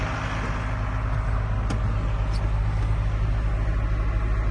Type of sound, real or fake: real